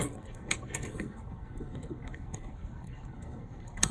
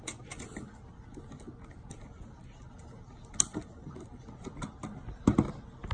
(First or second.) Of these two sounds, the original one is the second